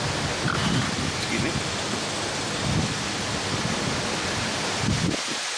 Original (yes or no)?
yes